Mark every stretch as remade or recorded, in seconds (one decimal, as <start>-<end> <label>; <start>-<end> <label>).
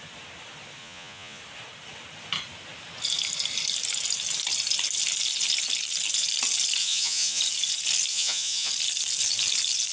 0.0-0.8 recorded; 0.8-1.4 remade; 1.4-6.8 recorded; 6.8-7.4 remade; 7.4-8.1 recorded; 8.1-8.7 remade; 8.7-9.9 recorded